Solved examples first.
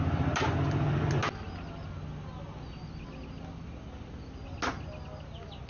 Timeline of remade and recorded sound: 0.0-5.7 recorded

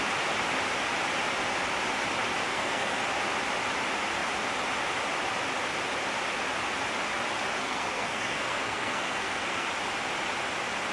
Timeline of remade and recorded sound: 0.0-2.5 recorded; 2.5-3.0 remade; 3.0-7.6 recorded; 7.6-9.7 remade; 9.7-10.9 recorded

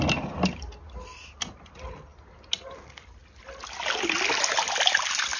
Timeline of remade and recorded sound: 0.0-5.4 recorded

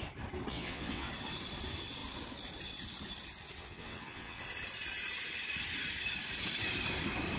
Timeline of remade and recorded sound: 0.0-0.5 recorded; 0.5-1.1 remade; 1.1-3.6 recorded; 3.6-4.4 remade; 4.4-7.4 recorded